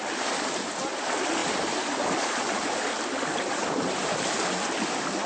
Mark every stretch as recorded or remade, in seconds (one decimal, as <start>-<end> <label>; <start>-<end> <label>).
0.0-5.3 recorded